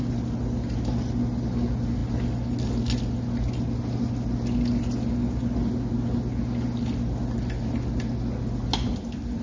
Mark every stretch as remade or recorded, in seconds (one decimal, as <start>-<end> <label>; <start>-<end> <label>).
0.0-9.4 recorded